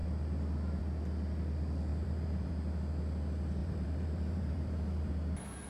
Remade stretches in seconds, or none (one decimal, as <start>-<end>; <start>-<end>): 1.9-2.5; 3.6-5.1